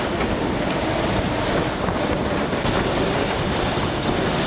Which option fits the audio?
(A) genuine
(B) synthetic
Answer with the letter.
A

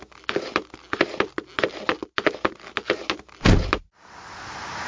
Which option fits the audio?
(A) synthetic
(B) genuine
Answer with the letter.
B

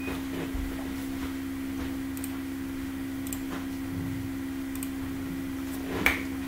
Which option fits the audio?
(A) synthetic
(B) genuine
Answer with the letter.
B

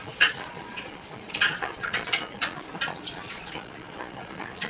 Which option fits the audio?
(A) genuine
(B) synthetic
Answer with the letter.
B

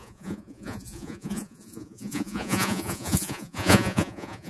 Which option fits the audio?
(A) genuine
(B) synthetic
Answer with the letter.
B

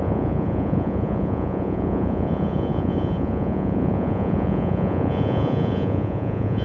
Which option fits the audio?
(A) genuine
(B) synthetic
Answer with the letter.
B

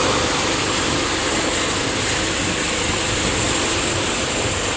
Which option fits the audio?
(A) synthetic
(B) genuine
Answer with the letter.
B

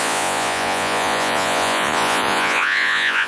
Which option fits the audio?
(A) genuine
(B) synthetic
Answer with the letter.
B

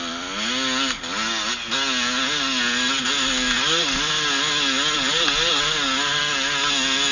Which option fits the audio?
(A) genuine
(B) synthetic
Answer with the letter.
A